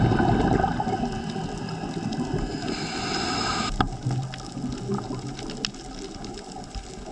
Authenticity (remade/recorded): recorded